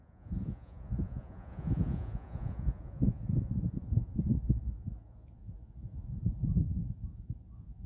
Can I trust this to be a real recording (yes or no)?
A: no